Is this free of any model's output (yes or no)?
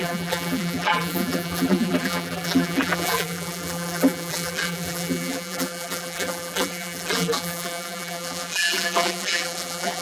no